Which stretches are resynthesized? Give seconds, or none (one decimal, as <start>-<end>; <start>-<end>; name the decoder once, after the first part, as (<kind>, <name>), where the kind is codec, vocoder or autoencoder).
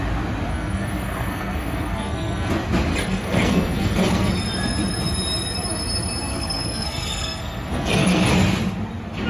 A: 0.5-2.5 (codec, SNAC); 2.9-4.3; 6.3-8.3